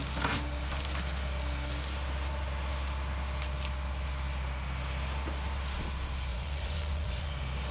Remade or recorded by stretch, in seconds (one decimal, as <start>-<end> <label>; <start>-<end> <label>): 0.0-6.3 recorded; 6.3-7.3 remade; 7.3-7.7 recorded